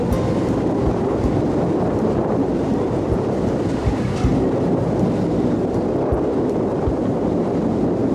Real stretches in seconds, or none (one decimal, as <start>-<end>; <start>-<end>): none